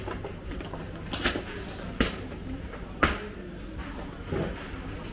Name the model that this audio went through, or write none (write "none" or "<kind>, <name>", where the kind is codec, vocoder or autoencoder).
none